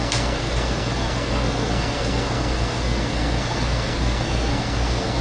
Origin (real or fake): fake